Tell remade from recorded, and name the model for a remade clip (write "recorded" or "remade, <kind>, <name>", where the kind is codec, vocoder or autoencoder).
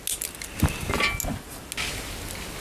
recorded